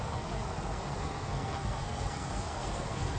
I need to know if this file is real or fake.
fake